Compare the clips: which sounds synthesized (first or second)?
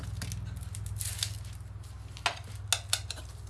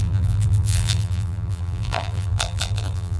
second